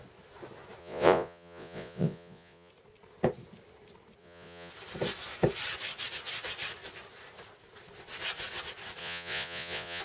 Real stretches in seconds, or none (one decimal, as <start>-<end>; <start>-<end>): 0.0-0.8; 2.7-4.2; 4.7-9.0